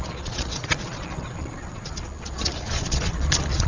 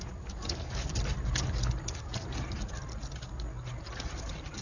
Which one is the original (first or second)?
second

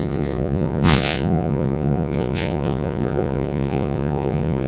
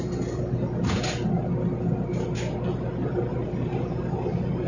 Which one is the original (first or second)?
second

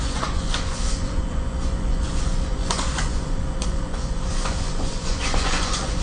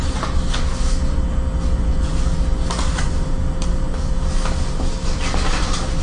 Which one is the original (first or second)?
second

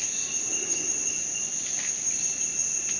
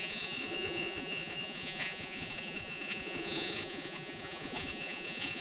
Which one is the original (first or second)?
first